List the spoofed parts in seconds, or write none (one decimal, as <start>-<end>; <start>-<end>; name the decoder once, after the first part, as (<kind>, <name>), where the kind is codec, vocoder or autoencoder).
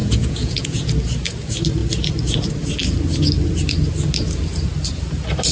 0.0-0.9 (vocoder, Vocos)